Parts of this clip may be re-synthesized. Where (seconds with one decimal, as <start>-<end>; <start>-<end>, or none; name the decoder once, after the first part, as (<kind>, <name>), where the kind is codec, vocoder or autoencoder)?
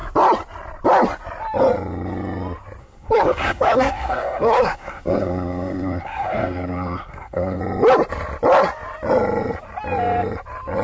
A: 2.8-7.6 (codec, SNAC)